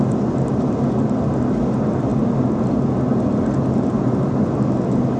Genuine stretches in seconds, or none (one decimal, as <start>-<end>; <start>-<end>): 0.0-5.2